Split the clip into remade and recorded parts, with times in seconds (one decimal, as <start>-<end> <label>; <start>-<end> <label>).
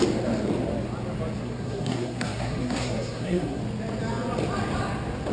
0.0-1.4 recorded; 1.4-3.6 remade; 3.6-5.3 recorded